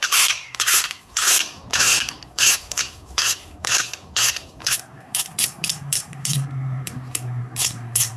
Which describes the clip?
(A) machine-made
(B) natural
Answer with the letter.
A